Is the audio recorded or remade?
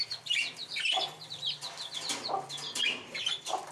remade